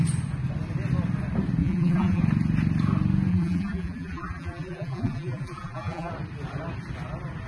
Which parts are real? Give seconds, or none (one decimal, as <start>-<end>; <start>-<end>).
0.0-1.6; 2.2-3.3; 6.1-7.5